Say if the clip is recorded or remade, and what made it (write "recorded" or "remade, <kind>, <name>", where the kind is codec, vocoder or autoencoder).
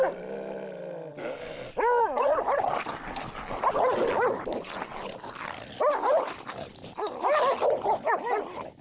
recorded